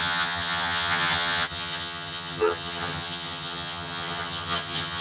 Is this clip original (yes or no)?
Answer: no